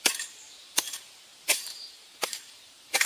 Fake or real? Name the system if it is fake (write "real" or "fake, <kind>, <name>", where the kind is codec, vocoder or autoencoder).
fake, vocoder, BigVGAN v2